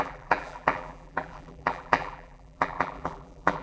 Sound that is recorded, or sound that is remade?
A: remade